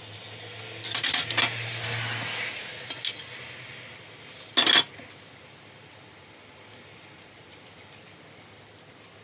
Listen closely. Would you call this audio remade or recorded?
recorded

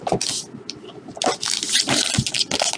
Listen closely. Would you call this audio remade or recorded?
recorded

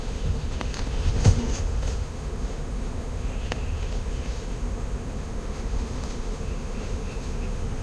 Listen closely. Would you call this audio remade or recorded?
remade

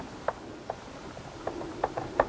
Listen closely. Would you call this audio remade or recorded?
remade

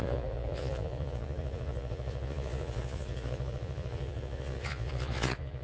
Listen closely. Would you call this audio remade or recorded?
remade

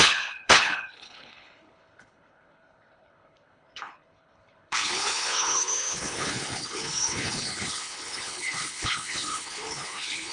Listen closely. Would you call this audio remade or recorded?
remade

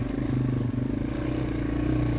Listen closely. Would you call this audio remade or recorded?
recorded